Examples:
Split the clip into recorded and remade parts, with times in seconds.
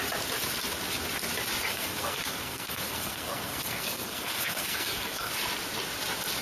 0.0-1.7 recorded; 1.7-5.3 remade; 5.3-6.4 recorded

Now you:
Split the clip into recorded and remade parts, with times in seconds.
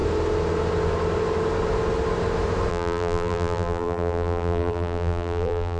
0.0-2.7 recorded; 2.7-5.8 remade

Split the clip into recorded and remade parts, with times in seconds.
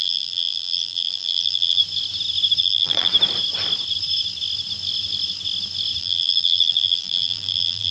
0.0-1.8 remade; 1.8-2.6 recorded; 2.6-3.1 remade; 3.1-6.0 recorded; 6.0-7.9 remade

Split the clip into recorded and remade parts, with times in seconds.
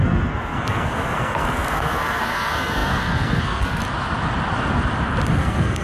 0.0-3.8 remade; 3.8-5.3 recorded; 5.3-5.8 remade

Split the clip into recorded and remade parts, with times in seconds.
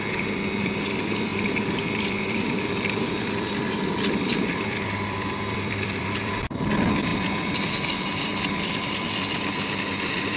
0.0-1.3 recorded; 1.3-6.3 remade; 6.3-7.1 recorded; 7.1-7.6 remade; 7.6-8.3 recorded; 8.3-8.9 remade; 8.9-10.4 recorded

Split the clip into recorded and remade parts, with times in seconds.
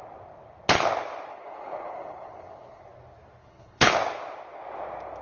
0.0-1.3 recorded; 1.3-2.8 remade; 2.8-3.4 recorded; 3.4-3.9 remade; 3.9-5.2 recorded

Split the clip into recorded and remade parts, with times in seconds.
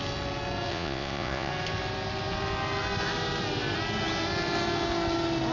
0.0-0.7 recorded; 0.7-1.5 remade; 1.5-5.5 recorded